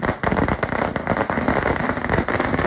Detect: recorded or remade recorded